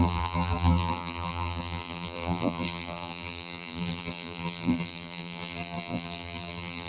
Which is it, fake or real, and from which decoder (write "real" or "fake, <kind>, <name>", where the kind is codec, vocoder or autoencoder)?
fake, vocoder, BigVGAN v2